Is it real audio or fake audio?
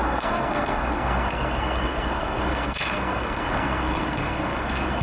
fake